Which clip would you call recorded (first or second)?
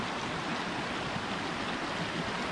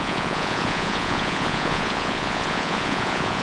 first